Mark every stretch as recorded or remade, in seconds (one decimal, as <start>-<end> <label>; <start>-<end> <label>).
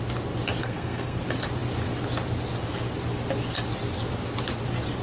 0.0-0.6 recorded; 0.6-1.2 remade; 1.2-5.0 recorded